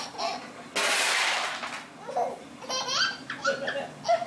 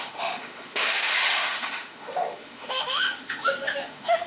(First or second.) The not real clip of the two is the second